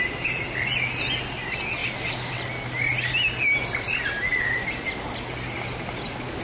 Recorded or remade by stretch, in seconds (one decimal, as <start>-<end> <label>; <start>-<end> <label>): 0.0-6.4 recorded